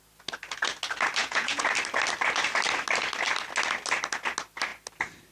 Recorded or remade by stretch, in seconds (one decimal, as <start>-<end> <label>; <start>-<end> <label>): 0.0-1.2 recorded; 1.2-1.7 remade; 1.7-5.3 recorded